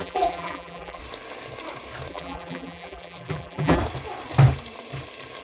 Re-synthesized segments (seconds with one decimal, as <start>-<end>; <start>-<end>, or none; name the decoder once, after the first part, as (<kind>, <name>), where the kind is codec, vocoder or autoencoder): 0.0-1.0 (vocoder, BigVGAN v2); 2.1-3.8